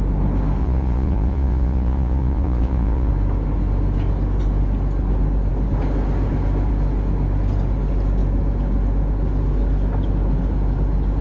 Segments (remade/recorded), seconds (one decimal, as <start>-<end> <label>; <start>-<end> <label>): 0.0-0.6 recorded; 0.6-3.1 remade; 3.1-11.2 recorded